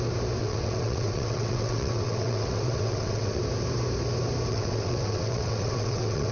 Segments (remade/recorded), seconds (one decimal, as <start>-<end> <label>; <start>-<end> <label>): 0.0-0.4 recorded; 0.4-3.4 remade; 3.4-4.5 recorded; 4.5-6.3 remade